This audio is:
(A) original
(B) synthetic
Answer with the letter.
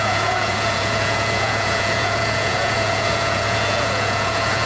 B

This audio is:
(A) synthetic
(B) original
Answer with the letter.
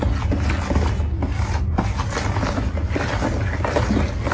B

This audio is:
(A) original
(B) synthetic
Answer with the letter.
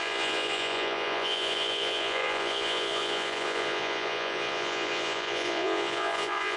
B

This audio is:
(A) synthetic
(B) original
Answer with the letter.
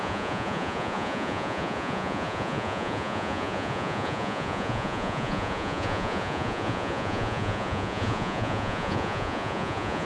A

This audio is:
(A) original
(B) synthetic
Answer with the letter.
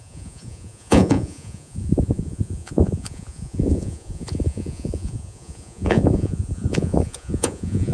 B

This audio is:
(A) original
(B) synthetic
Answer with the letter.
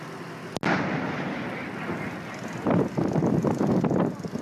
A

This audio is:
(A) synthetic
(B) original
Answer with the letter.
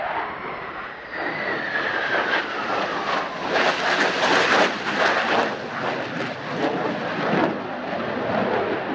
B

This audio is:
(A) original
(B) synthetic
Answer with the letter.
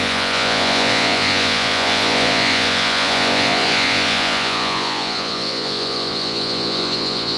B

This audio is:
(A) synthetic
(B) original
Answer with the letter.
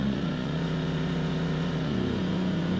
A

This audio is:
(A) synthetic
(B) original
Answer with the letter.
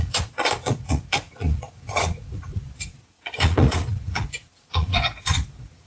A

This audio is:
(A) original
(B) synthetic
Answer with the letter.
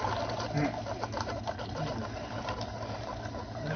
A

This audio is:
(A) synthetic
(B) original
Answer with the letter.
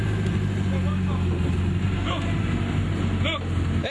B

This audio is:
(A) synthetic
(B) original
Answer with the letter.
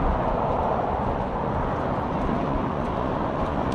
A